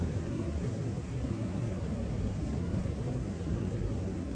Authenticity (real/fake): fake